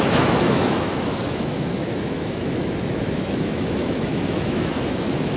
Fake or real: fake